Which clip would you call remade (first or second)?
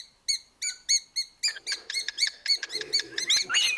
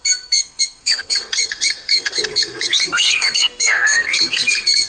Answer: second